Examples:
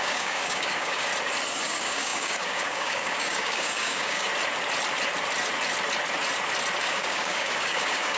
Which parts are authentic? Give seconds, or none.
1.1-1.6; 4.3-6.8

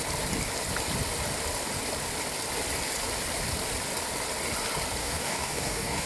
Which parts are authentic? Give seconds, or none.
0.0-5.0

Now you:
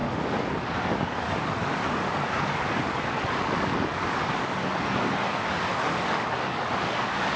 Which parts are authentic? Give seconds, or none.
none